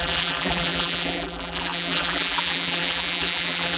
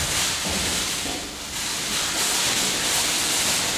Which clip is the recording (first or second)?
second